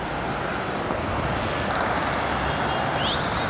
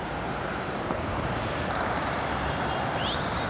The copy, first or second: second